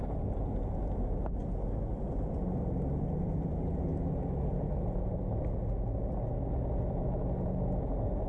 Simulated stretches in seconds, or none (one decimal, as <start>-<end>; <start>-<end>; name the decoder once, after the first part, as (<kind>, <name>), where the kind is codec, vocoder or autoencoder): none